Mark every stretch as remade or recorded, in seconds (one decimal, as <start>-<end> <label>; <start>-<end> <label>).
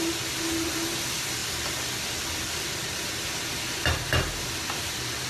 0.0-5.3 recorded